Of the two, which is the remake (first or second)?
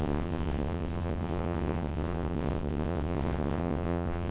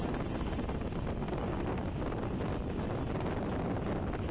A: first